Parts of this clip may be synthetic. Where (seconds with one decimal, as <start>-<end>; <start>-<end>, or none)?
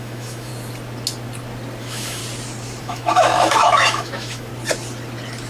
0.0-0.5; 1.8-2.2; 2.8-4.5